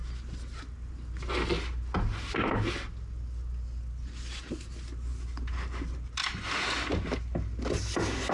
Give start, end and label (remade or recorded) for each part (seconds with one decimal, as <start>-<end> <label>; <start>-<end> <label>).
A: 0.0-8.3 recorded